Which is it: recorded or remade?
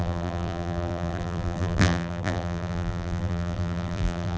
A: remade